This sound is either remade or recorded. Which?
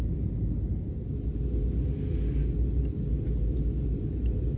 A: recorded